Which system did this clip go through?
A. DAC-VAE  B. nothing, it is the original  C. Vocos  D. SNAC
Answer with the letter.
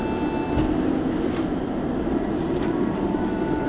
B